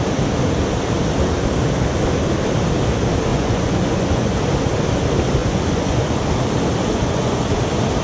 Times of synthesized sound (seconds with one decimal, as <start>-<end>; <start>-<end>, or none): 3.3-4.4; 5.4-6.2; 6.8-7.6